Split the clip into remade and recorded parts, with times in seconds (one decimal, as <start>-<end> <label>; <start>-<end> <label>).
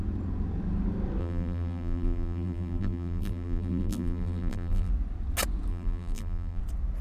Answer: 0.0-1.2 recorded; 1.2-4.9 remade; 4.9-5.7 recorded; 5.7-6.6 remade; 6.6-7.0 recorded